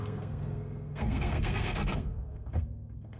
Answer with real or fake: fake